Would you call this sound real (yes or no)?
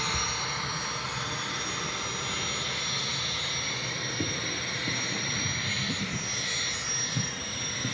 yes